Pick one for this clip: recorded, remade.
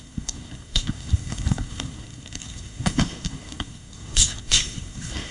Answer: remade